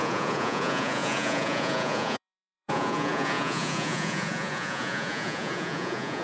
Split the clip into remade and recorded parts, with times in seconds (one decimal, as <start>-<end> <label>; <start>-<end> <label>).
0.0-6.2 remade